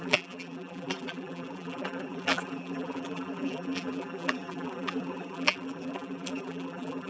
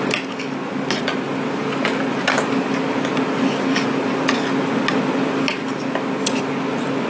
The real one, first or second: second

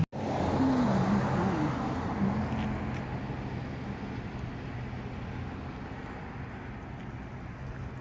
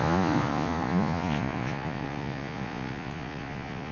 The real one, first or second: first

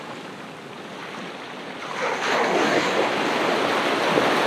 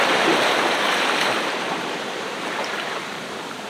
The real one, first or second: first